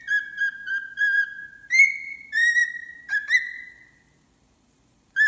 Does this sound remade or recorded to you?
remade